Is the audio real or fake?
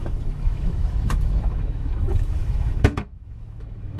fake